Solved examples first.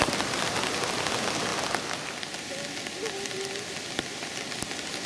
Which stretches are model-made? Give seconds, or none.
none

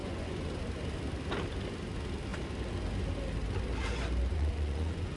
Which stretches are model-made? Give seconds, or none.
0.0-0.6 (vocoder, Vocos); 4.3-5.2

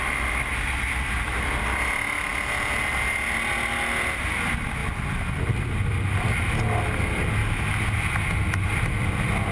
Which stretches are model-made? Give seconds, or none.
none

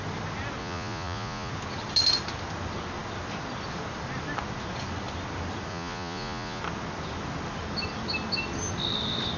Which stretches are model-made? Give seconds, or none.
0.6-1.5 (vocoder, Vocos); 5.7-6.6